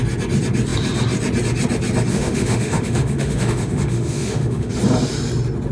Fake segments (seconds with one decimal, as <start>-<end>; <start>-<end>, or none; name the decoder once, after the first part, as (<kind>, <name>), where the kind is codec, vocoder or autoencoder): 2.1-4.7 (autoencoder, DAC-VAE)